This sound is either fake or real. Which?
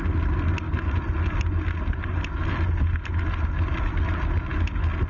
real